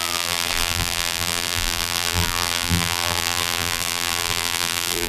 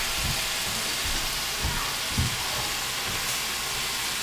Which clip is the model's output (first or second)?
first